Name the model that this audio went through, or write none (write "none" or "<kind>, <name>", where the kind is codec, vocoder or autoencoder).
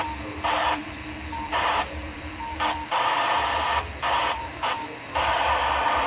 vocoder, BigVGAN v2